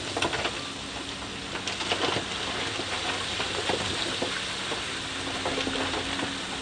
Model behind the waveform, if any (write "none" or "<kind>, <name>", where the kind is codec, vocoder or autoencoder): none